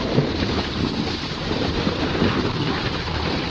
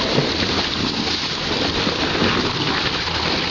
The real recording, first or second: second